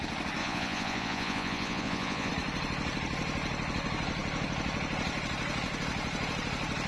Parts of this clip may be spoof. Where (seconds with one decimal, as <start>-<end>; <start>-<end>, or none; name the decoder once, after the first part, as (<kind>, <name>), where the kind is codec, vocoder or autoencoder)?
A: 0.4-2.3 (vocoder, Vocos)